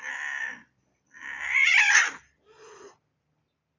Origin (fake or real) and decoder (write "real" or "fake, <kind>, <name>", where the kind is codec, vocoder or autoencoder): real